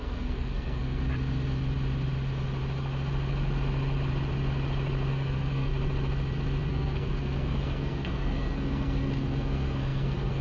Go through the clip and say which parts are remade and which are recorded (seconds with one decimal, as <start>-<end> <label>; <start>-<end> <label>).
0.0-1.0 remade; 1.0-5.1 recorded; 5.1-5.7 remade; 5.7-6.7 recorded; 6.7-10.4 remade